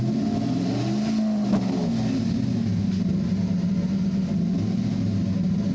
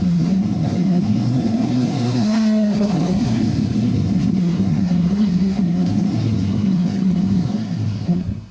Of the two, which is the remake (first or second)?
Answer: second